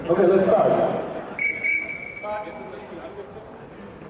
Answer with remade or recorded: recorded